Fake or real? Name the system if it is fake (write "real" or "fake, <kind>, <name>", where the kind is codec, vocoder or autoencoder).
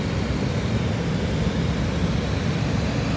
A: real